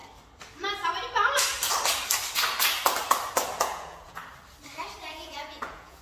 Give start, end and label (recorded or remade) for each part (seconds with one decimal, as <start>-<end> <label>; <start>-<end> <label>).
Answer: 0.0-3.6 recorded; 3.6-4.2 remade; 4.2-5.1 recorded; 5.1-6.0 remade